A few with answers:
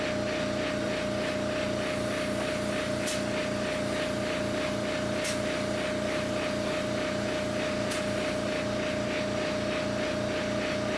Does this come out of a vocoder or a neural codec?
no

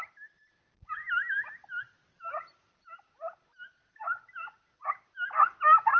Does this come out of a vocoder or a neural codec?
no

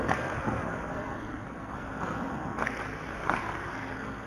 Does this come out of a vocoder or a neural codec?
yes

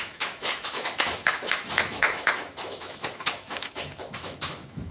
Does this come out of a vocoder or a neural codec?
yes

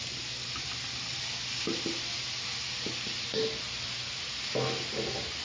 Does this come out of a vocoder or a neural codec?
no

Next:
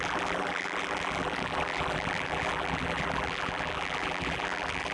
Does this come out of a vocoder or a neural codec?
yes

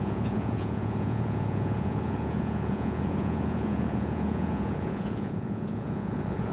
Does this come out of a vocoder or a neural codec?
yes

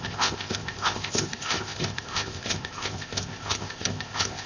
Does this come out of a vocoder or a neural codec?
yes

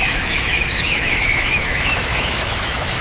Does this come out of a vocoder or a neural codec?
yes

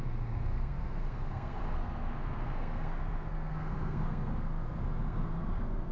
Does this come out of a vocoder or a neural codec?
yes